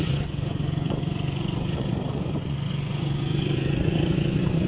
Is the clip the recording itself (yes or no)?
no